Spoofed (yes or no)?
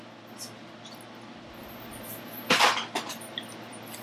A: no